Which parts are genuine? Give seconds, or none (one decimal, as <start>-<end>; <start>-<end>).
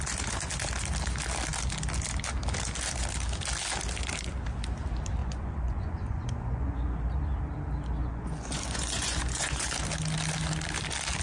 0.0-5.2; 7.0-8.0; 9.7-11.2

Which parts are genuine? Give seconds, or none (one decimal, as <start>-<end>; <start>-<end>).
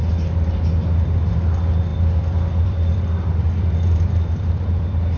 0.0-1.9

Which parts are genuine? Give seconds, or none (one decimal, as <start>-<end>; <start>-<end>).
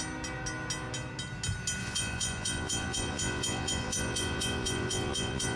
0.0-1.8